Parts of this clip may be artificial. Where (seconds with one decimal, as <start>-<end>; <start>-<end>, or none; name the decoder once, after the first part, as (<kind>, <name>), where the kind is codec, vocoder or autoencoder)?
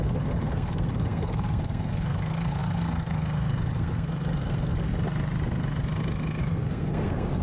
0.0-4.9 (codec, SNAC); 6.4-7.4